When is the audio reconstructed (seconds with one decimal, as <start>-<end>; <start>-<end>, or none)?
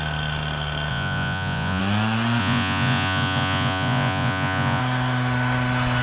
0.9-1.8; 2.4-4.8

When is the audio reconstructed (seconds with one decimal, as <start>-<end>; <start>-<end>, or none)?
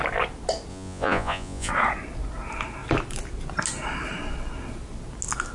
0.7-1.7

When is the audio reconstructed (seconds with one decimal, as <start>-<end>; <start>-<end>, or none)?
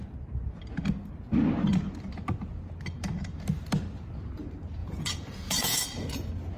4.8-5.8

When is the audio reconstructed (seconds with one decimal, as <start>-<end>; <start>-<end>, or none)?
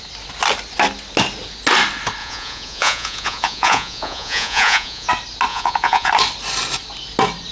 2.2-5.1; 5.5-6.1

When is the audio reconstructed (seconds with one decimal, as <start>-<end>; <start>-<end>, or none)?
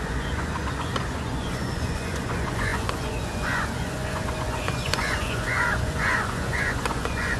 0.0-7.4